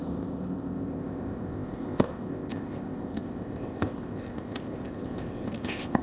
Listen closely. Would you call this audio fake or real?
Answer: fake